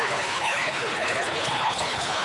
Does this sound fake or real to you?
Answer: fake